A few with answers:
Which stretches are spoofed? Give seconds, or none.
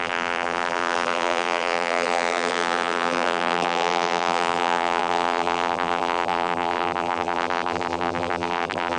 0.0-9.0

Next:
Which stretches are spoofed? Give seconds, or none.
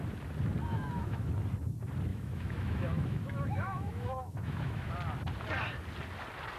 0.7-1.3; 2.1-4.9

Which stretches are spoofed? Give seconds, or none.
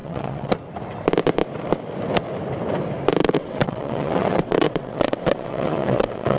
0.0-0.5; 3.2-6.4